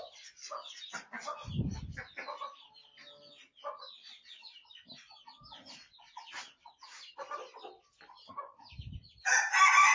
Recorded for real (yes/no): yes